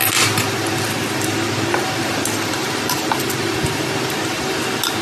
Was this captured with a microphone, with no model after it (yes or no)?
yes